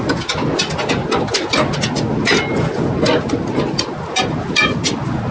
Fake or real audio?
real